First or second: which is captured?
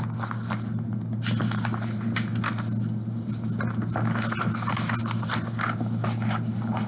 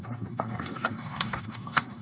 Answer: first